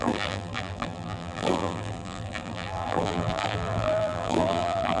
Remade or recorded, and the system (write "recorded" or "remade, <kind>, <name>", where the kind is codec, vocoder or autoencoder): remade, vocoder, BigVGAN v2